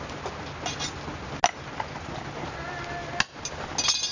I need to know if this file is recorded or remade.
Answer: recorded